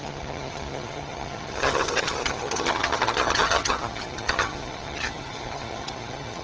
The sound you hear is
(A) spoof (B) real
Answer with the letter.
A